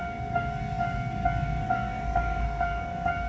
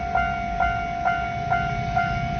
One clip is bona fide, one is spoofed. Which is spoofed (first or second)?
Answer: first